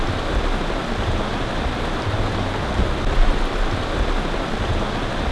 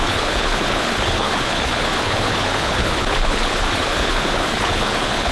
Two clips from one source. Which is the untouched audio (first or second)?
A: first